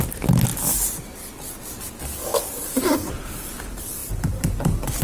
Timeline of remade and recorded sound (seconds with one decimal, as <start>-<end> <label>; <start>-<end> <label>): 0.0-2.3 recorded; 2.3-3.6 remade; 3.6-4.0 recorded; 4.0-5.0 remade

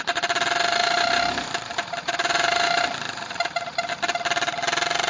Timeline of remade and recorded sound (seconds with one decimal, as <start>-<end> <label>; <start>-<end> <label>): 0.0-0.8 recorded; 0.8-3.9 remade; 3.9-5.1 recorded

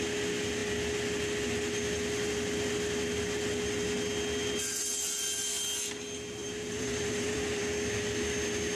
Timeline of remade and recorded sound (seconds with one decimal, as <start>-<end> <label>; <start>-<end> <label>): 0.0-6.4 recorded; 6.4-7.6 remade; 7.6-8.8 recorded